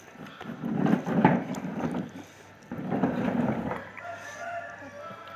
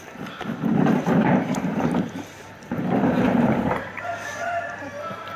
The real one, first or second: first